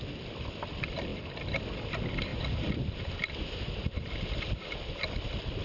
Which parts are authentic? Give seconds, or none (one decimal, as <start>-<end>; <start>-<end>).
0.0-5.6

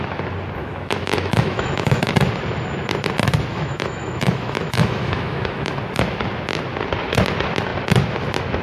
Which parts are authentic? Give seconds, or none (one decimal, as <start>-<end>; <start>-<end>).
0.0-0.6; 2.1-3.5; 5.7-8.6

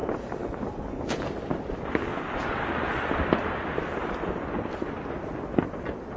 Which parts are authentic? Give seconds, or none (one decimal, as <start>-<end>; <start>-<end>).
0.0-2.1; 4.9-6.2

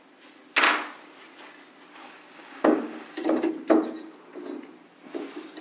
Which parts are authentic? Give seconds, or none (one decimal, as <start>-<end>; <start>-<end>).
0.0-2.0; 3.5-5.6

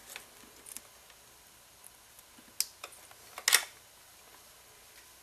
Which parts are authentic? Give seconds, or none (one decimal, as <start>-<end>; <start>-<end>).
0.0-5.2

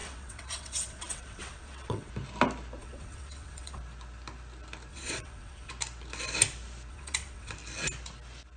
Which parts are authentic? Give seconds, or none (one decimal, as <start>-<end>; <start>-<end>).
2.1-2.8; 3.8-4.9; 5.7-6.9; 7.5-8.6